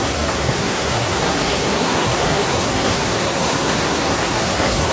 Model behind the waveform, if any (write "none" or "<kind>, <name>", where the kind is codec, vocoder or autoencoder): codec, SNAC